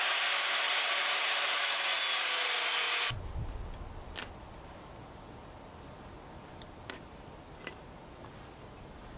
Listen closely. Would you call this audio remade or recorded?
recorded